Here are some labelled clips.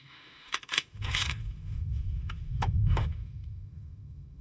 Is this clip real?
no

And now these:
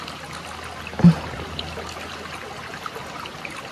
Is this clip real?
yes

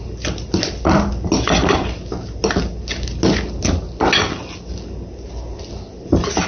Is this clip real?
yes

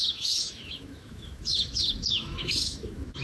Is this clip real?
no